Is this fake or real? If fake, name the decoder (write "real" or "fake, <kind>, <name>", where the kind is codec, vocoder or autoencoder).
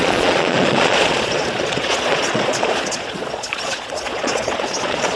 fake, vocoder, Vocos